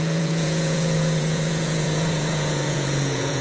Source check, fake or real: fake